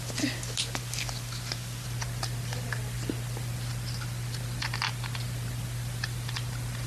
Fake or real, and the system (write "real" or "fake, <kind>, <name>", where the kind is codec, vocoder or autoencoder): real